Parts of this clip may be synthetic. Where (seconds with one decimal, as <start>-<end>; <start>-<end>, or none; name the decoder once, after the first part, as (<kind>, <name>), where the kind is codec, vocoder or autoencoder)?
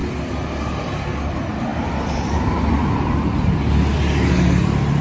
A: none